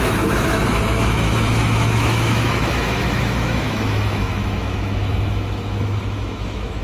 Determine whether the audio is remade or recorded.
remade